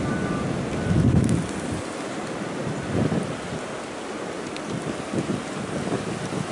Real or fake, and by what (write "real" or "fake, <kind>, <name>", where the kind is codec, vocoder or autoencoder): real